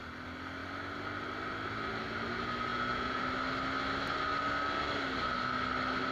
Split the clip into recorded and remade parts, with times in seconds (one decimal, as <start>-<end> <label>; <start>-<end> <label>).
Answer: 0.0-2.7 recorded; 2.7-3.2 remade; 3.2-6.1 recorded